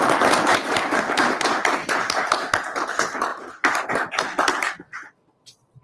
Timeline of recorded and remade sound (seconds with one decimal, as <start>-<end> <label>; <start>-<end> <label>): 0.0-0.5 recorded; 0.5-2.2 remade; 2.2-3.3 recorded; 3.3-3.9 remade; 3.9-5.8 recorded

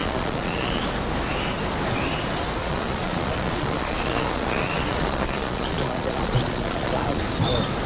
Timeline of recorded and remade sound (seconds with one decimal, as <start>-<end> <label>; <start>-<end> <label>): 0.0-0.8 remade; 0.8-2.6 recorded; 2.6-7.2 remade; 7.2-7.9 recorded

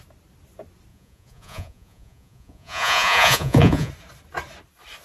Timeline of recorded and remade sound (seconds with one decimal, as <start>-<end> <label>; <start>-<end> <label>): 0.0-0.9 recorded; 0.9-3.9 remade; 3.9-5.0 recorded

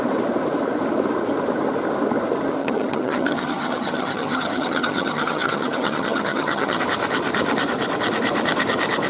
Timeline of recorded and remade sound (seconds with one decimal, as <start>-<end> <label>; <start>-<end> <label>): 0.0-2.6 recorded; 2.6-6.8 remade; 6.8-9.1 recorded

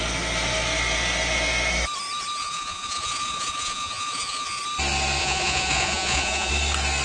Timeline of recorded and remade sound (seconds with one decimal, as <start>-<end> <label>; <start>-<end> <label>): 0.0-2.4 recorded; 2.4-4.6 remade; 4.6-5.2 recorded; 5.2-6.5 remade; 6.5-7.0 recorded

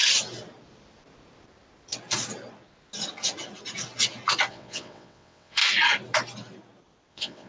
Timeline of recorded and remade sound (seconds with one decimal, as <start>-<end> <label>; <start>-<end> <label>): 0.0-4.5 recorded; 4.5-5.6 remade; 5.6-7.1 recorded; 7.1-7.5 remade